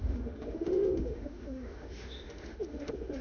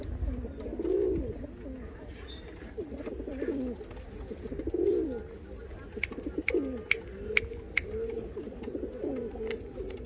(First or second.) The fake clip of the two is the first